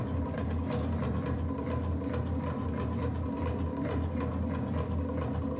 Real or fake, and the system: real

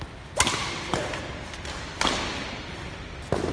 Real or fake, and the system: real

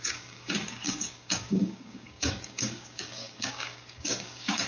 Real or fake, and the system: fake, codec, DAC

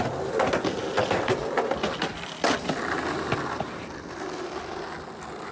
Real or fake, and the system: real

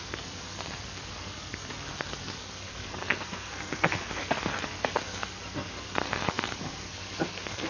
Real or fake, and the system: fake, codec, SNAC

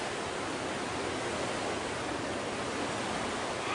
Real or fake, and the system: real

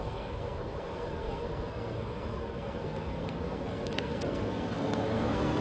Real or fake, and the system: fake, codec, SNAC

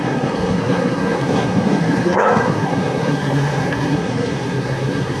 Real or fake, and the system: fake, codec, SNAC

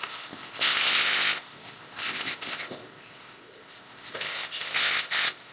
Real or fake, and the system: fake, codec, ZipCodec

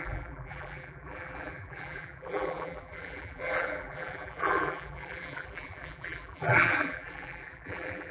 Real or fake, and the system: fake, vocoder, BigVGAN v2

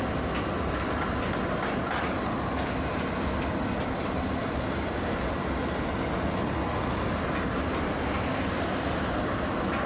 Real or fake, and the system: real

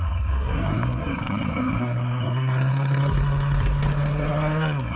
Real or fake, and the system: fake, codec, SNAC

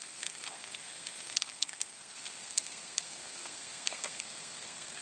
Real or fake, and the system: fake, codec, SNAC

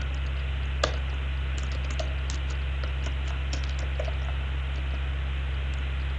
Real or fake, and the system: real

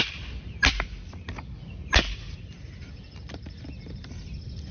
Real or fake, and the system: real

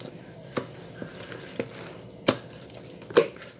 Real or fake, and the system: real